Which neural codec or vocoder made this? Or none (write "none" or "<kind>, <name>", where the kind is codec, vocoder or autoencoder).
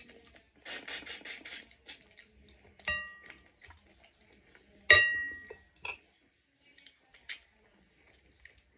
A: none